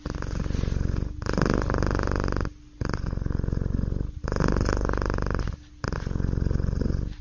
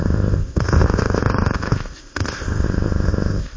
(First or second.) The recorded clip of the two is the first